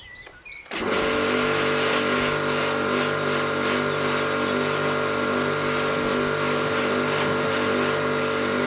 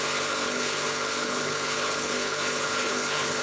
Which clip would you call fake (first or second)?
second